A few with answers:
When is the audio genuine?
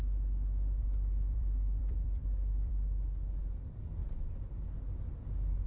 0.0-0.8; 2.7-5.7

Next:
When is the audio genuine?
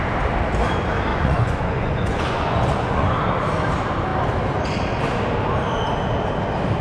0.0-1.1; 3.1-6.8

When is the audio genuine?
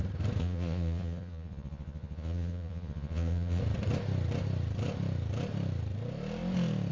0.0-0.4; 3.6-6.9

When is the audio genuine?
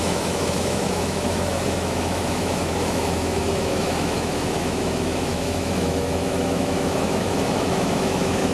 none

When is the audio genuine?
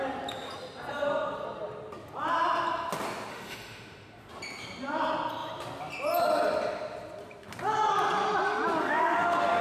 0.0-3.3; 4.3-8.8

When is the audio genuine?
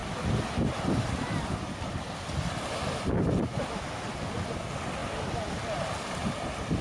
4.1-6.8